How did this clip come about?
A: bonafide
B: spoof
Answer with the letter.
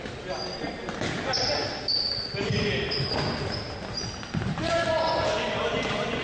A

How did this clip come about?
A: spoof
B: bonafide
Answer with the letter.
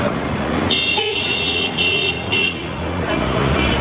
A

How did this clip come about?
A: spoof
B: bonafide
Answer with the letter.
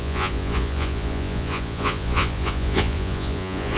A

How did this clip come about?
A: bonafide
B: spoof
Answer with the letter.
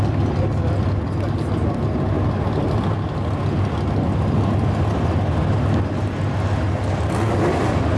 A